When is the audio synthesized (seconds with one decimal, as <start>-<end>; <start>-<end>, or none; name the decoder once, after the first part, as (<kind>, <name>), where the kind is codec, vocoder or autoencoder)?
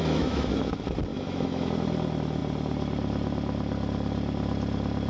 0.0-0.5 (autoencoder, DAC-VAE); 1.1-1.7